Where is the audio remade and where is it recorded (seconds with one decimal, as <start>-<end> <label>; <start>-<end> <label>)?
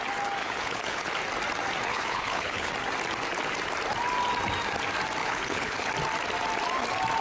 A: 0.0-0.4 recorded; 0.4-1.1 remade; 1.1-1.9 recorded; 1.9-2.7 remade; 2.7-5.2 recorded; 5.2-5.9 remade; 5.9-7.2 recorded